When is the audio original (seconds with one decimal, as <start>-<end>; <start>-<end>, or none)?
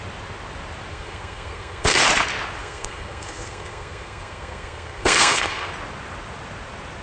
0.0-0.9; 2.0-2.6; 5.7-7.0